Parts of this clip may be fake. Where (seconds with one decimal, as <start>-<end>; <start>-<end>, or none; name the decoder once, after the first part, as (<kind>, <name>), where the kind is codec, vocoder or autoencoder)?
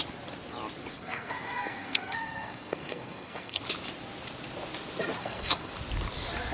0.9-3.6 (codec, SNAC); 5.2-5.7